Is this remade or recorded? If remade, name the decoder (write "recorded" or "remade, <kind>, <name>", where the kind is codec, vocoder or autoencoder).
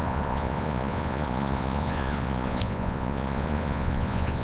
remade, vocoder, Vocos